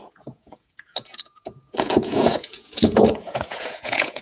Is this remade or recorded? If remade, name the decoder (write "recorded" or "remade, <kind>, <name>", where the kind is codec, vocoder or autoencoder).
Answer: remade, vocoder, Vocos